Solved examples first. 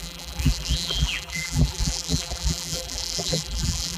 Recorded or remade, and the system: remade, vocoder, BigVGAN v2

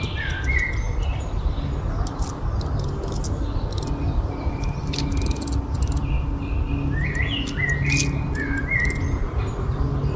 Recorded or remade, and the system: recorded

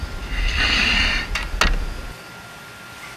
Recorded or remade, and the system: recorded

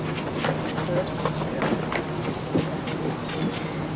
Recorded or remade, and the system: recorded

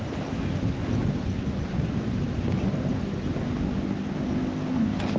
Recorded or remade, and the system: recorded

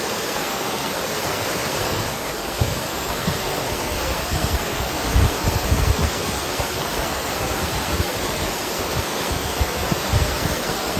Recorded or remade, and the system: remade, codec, SNAC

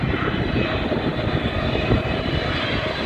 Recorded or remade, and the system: recorded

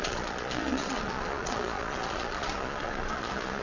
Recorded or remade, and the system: remade, vocoder, Vocos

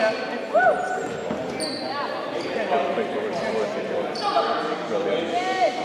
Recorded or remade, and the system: recorded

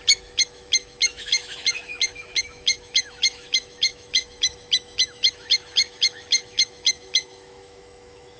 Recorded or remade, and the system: remade, autoencoder, DAC-VAE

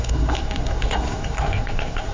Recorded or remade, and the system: remade, codec, SNAC